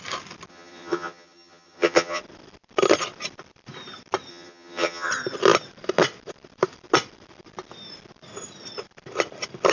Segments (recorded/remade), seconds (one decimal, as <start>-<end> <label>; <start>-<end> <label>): 0.0-0.5 recorded; 0.5-2.2 remade; 2.2-4.3 recorded; 4.3-5.1 remade; 5.1-9.7 recorded